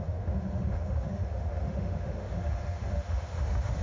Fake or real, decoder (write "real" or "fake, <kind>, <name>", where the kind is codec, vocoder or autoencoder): fake, autoencoder, DAC-VAE